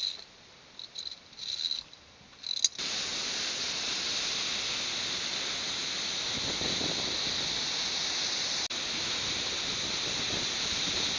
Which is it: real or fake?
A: real